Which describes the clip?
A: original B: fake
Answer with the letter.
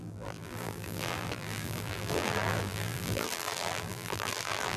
B